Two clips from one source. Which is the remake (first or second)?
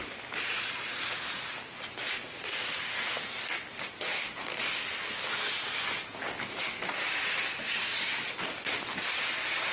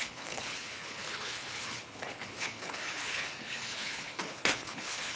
second